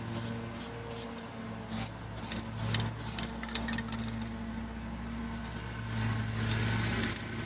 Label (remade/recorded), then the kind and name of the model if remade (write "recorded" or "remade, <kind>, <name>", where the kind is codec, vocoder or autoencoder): recorded